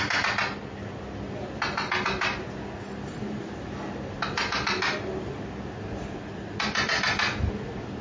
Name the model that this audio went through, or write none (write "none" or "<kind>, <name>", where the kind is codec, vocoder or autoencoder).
none